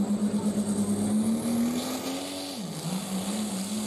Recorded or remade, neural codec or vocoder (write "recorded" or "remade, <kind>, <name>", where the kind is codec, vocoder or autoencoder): recorded